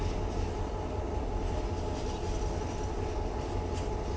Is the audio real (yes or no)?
yes